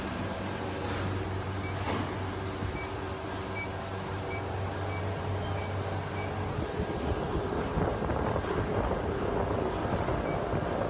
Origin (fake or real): real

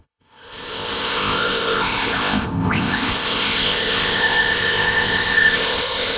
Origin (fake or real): fake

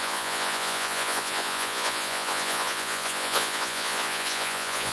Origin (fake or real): fake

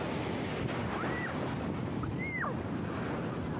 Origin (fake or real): real